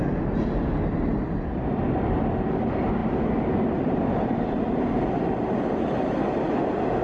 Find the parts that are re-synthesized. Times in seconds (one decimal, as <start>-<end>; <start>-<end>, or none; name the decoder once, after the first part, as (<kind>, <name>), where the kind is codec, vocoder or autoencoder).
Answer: none

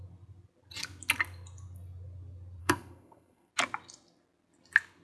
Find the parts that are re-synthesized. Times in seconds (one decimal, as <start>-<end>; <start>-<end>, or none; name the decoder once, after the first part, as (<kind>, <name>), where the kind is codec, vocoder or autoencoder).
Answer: 2.6-3.5 (codec, SNAC)

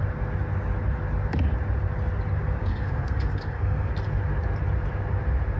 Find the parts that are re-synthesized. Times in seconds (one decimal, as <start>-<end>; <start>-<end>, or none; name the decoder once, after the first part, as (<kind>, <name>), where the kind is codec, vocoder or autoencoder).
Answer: 2.7-3.9 (codec, SNAC)